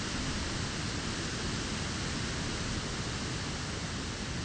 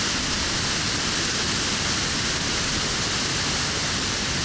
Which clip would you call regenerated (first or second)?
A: second